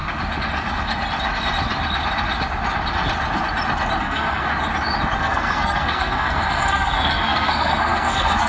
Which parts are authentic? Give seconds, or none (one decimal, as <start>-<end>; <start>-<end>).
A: 0.0-4.0; 4.5-5.2